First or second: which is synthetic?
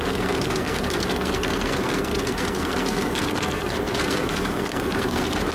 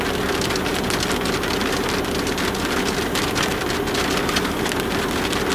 first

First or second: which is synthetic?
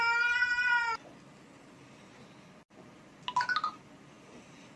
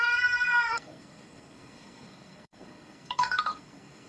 second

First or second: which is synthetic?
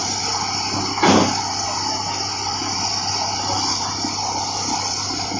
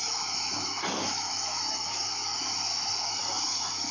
second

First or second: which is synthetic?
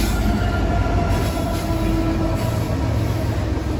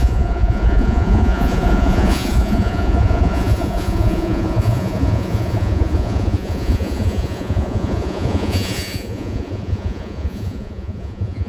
second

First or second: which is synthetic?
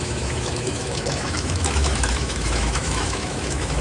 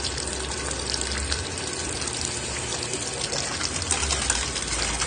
first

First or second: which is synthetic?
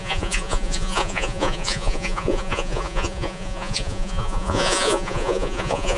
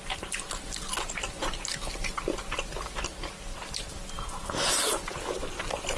first